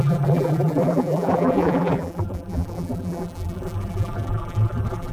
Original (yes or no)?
no